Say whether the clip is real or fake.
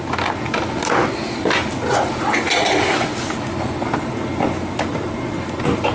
real